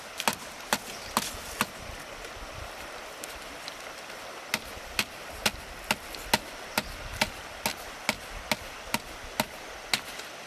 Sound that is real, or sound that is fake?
real